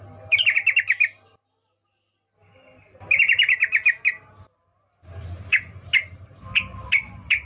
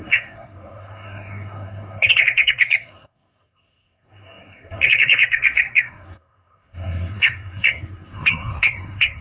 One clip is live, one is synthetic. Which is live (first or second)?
first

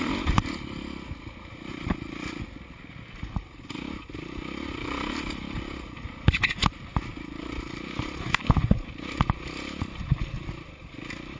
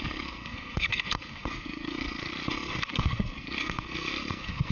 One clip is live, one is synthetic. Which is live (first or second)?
first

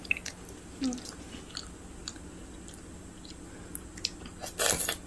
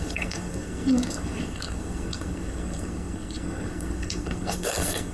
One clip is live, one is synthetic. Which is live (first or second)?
first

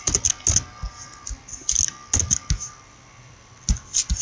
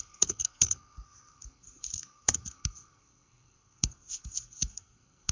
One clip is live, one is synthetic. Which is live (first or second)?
first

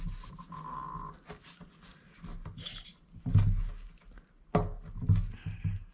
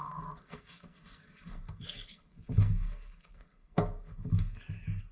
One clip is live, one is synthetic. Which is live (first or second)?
first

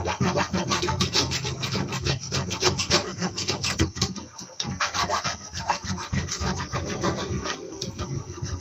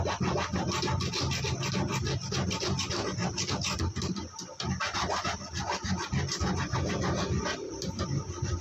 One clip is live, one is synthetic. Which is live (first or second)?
second